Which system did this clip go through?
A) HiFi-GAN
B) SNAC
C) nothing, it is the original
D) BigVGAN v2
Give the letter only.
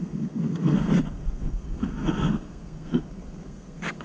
B